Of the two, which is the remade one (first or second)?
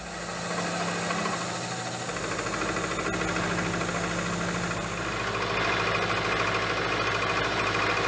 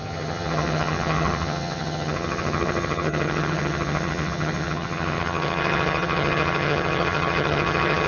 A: second